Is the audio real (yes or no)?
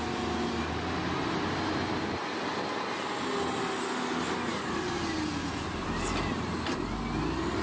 yes